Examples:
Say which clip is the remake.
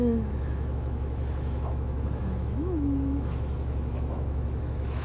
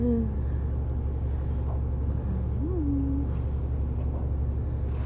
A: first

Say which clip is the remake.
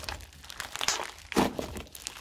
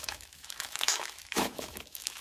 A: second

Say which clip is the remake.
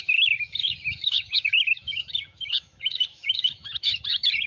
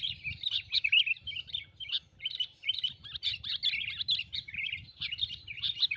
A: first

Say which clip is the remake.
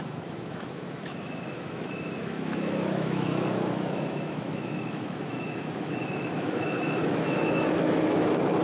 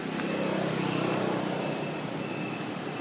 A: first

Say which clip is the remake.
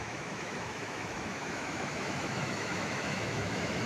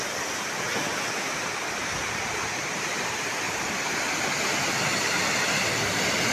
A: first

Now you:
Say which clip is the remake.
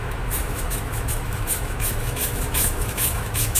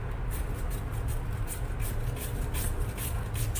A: first